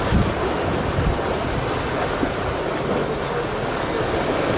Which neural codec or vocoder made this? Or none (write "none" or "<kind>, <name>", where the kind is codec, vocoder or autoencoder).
none